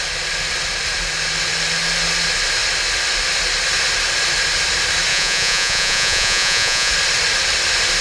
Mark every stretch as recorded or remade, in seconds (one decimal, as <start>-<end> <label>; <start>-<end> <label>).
0.0-5.1 recorded; 5.1-6.9 remade; 6.9-8.0 recorded